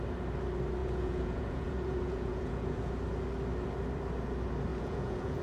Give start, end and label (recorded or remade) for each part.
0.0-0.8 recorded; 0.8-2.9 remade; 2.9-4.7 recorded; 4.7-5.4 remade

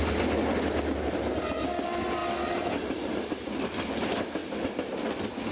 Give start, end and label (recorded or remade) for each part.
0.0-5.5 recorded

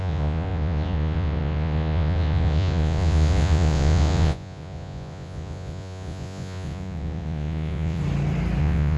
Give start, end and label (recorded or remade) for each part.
0.0-8.0 remade; 8.0-8.6 recorded; 8.6-9.0 remade